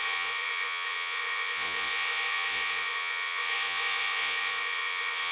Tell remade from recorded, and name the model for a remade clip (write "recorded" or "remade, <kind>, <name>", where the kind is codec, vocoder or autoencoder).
remade, vocoder, Vocos